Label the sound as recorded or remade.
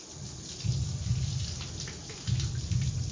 recorded